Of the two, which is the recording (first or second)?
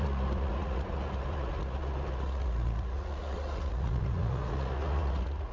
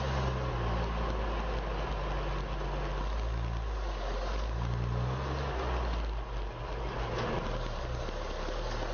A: second